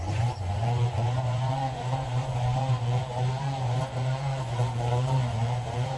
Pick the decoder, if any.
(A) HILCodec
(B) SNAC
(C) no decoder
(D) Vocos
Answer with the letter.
D